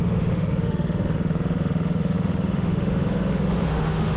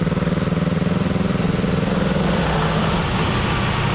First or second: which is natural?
second